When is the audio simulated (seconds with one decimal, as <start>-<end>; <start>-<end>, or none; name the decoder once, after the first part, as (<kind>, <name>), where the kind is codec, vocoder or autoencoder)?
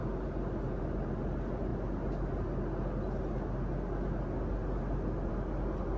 none